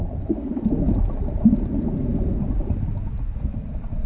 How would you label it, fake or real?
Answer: real